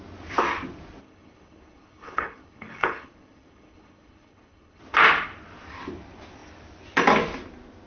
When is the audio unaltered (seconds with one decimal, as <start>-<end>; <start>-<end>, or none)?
0.0-1.0; 4.8-7.9